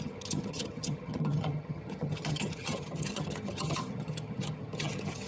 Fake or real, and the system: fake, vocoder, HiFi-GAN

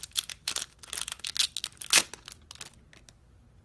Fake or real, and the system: real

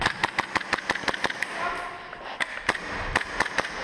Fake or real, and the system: real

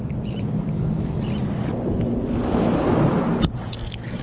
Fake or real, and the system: real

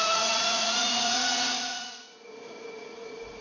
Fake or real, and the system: fake, vocoder, Vocos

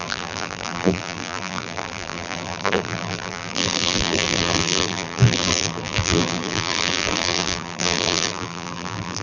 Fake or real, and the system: fake, vocoder, BigVGAN v2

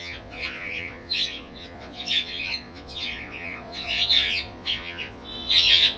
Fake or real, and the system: fake, vocoder, Vocos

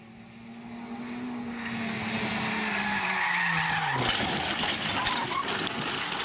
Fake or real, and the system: real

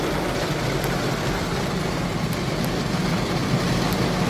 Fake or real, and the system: real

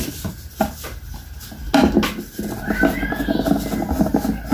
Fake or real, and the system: real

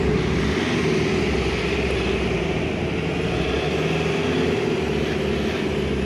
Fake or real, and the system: real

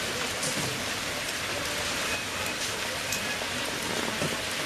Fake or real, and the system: real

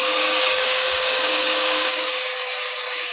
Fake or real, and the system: fake, codec, DAC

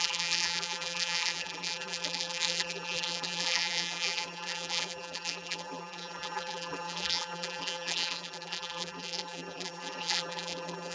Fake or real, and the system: fake, vocoder, BigVGAN v2